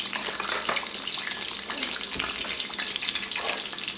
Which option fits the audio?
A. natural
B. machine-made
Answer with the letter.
A